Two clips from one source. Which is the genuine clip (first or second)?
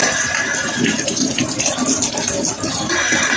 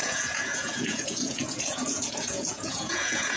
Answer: first